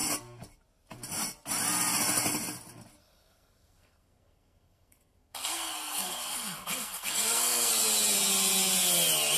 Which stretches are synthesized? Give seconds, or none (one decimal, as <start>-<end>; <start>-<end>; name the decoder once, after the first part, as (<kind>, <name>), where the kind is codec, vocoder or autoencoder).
3.0-7.7 (codec, SNAC)